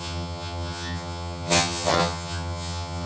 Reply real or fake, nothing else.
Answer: fake